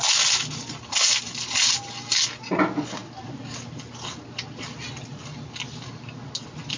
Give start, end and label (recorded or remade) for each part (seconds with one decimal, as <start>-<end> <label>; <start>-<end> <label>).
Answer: 0.0-6.8 recorded